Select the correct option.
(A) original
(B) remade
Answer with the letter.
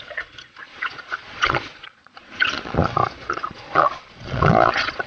B